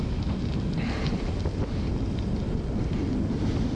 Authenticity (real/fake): real